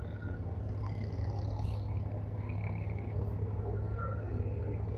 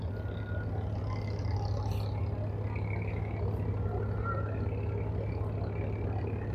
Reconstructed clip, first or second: first